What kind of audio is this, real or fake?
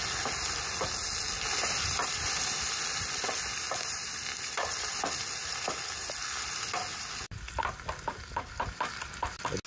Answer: real